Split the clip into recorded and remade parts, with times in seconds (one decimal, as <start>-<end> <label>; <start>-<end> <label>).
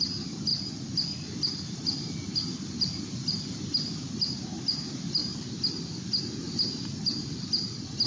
0.0-8.1 recorded